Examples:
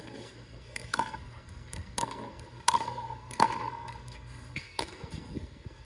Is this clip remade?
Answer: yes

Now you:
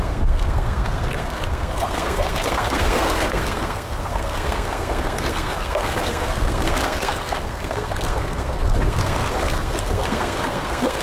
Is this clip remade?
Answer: yes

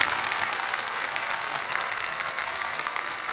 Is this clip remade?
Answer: yes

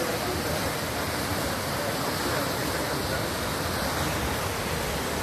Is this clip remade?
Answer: no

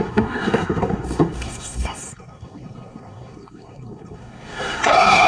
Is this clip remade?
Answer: yes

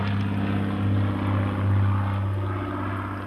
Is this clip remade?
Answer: no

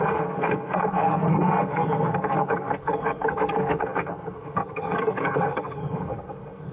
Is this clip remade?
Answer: yes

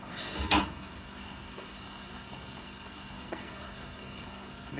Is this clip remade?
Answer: yes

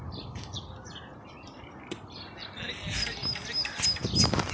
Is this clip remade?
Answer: no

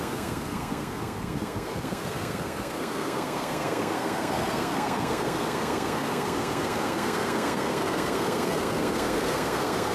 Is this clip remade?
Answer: yes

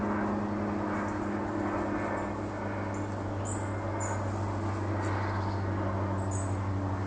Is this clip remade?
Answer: no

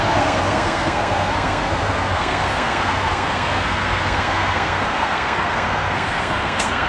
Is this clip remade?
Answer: yes